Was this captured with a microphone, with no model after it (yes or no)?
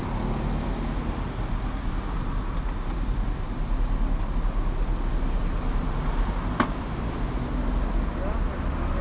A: yes